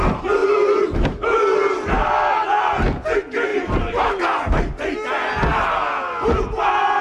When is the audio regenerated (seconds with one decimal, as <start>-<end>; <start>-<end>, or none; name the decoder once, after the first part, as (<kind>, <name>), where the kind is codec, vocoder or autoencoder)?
0.4-2.1 (vocoder, BigVGAN v2); 3.5-4.2